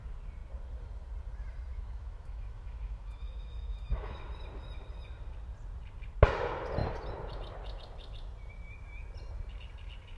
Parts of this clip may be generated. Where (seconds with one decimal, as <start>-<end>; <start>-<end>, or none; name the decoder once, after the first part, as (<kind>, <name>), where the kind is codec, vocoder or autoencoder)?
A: 1.7-4.3 (autoencoder, DAC-VAE)